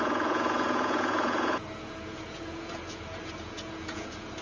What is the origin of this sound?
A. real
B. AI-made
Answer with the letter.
B